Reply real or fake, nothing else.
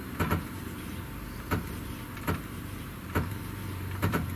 fake